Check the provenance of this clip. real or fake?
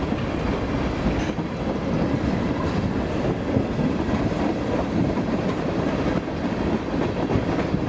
real